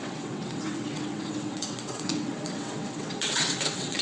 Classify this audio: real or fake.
fake